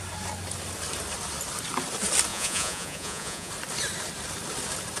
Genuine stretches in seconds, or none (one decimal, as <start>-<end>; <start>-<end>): 0.0-2.3; 3.5-5.0